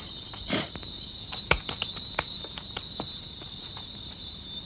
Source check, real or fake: fake